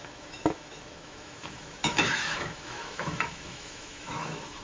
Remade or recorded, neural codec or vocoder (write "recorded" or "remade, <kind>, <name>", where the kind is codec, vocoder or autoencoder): remade, autoencoder, DAC-VAE